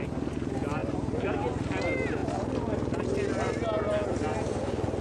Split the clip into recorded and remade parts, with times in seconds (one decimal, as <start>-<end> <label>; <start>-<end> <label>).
0.0-0.8 recorded; 0.8-1.3 remade; 1.3-5.0 recorded